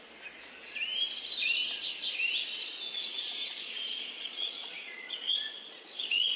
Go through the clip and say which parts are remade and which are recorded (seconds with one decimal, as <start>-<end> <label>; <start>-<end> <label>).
0.0-2.6 recorded; 2.6-6.4 remade